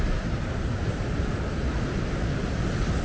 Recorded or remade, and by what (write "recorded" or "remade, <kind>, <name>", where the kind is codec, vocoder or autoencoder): recorded